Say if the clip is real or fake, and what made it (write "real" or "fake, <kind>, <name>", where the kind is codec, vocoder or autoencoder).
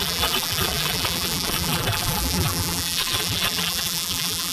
fake, vocoder, BigVGAN v2